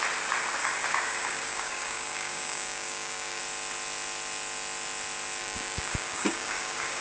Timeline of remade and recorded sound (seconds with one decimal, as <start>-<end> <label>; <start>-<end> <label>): 0.0-0.6 recorded; 0.6-3.4 remade; 3.4-5.4 recorded; 5.4-7.0 remade

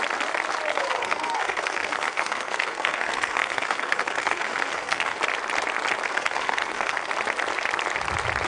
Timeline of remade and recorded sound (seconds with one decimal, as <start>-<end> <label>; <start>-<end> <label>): 0.0-0.7 recorded; 0.7-5.2 remade; 5.2-6.1 recorded; 6.1-7.1 remade; 7.1-8.5 recorded

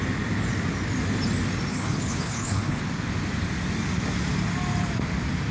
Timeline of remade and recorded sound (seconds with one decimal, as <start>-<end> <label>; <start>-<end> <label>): 0.0-1.7 recorded; 1.7-2.8 remade; 2.8-5.5 recorded